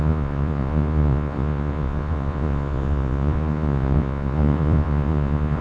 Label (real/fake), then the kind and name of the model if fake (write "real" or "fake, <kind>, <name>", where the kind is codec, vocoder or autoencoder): fake, vocoder, Vocos